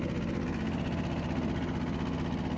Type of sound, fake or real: real